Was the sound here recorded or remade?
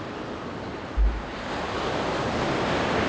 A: recorded